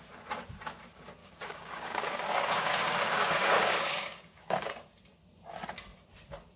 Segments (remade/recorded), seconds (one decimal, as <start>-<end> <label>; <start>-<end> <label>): 0.0-1.2 recorded; 1.2-4.7 remade; 4.7-6.6 recorded